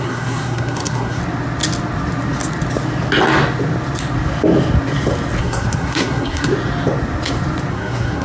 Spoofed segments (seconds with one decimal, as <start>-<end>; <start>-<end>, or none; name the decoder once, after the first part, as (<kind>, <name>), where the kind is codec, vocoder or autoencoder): 0.0-1.2 (codec, SNAC); 5.4-6.5; 7.7-8.2